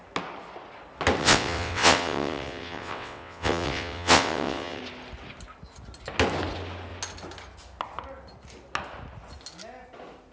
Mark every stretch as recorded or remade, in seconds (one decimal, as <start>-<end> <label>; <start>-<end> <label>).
0.0-1.2 recorded; 1.2-4.8 remade; 4.8-10.3 recorded